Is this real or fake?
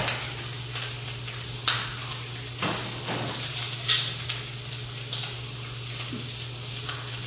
real